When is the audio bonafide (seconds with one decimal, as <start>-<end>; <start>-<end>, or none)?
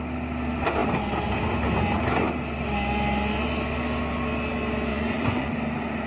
0.0-4.9; 5.5-6.1